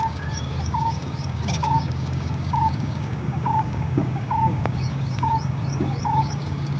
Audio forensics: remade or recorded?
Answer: remade